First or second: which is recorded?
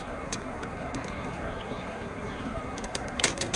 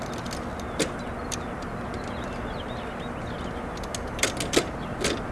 second